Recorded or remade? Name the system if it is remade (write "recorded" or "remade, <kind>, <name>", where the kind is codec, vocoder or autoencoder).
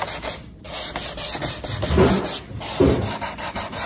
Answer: recorded